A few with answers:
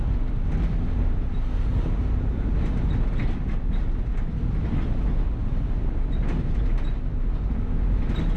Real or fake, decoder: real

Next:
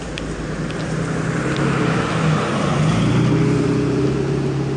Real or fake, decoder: real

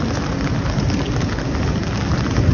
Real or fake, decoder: real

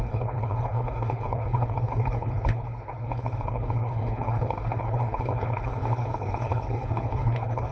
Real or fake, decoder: fake, codec, HILCodec